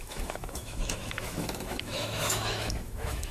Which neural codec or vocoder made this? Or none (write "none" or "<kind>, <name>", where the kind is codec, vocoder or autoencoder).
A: autoencoder, DAC-VAE